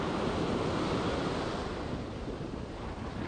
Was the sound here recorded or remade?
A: recorded